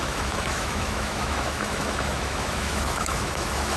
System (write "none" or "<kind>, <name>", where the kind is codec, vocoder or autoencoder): autoencoder, DAC-VAE